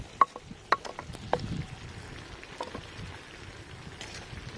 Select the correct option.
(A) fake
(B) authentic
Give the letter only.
B